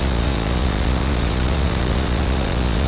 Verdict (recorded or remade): remade